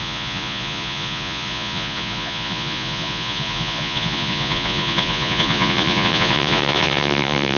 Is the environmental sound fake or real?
fake